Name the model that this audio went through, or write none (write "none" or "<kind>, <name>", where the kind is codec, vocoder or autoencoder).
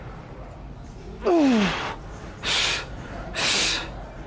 none